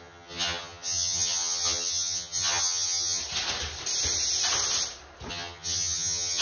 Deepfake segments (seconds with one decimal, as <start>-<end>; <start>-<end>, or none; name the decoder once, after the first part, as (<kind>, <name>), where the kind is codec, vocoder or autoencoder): 0.0-3.2 (vocoder, HiFi-GAN); 5.3-6.4